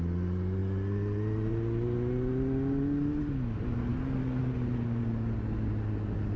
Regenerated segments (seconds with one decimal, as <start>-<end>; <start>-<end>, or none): none